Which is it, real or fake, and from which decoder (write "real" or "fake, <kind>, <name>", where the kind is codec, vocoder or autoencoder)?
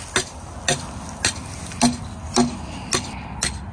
real